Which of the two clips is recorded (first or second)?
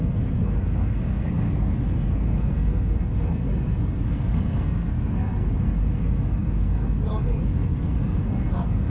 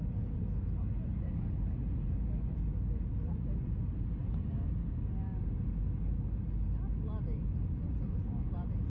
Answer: second